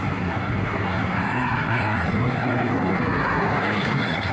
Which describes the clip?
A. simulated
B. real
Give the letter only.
A